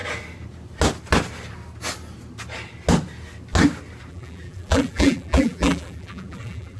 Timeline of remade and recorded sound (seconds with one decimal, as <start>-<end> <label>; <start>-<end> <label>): 0.0-4.1 recorded; 4.1-6.8 remade